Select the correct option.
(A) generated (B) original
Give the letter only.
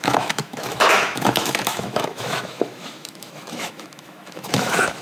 A